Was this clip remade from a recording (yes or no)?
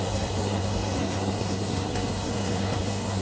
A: yes